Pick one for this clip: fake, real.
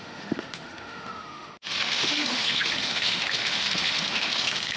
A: fake